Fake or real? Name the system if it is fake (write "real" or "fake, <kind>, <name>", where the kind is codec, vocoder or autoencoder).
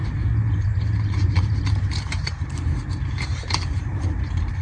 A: fake, vocoder, BigVGAN v2